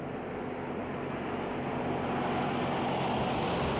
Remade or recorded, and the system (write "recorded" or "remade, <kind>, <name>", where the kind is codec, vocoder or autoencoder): recorded